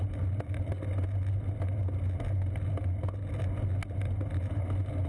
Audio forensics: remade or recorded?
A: recorded